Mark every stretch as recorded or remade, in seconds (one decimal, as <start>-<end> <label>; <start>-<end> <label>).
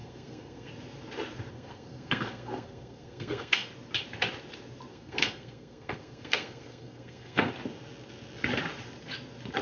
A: 0.0-0.7 remade; 0.7-1.5 recorded; 1.5-3.7 remade; 3.7-4.9 recorded; 4.9-7.5 remade; 7.5-9.6 recorded